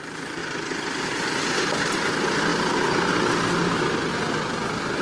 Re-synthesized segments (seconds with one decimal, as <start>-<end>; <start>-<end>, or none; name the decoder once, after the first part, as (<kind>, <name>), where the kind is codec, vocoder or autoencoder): 0.0-0.4 (vocoder, BigVGAN v2); 1.6-4.1